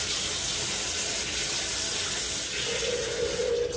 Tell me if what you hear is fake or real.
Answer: real